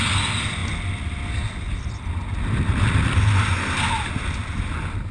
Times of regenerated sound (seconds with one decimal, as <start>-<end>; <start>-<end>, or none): none